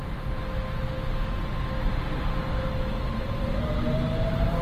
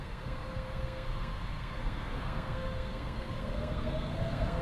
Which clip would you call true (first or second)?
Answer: first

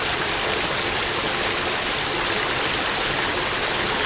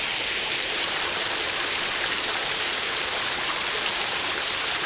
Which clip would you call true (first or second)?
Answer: first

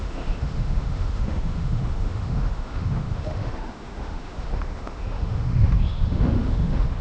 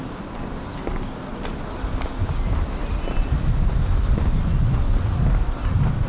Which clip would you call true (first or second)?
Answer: second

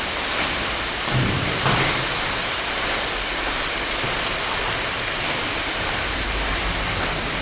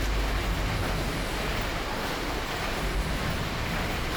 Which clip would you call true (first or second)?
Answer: second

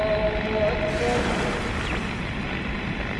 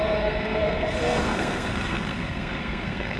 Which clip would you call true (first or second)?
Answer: first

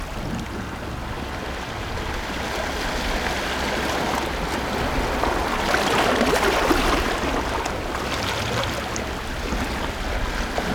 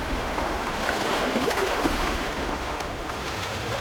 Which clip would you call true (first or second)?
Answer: first